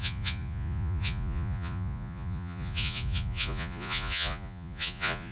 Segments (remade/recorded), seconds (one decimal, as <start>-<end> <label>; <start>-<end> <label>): 0.0-5.3 remade